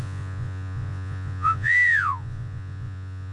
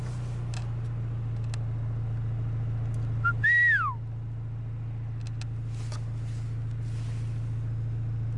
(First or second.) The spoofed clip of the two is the first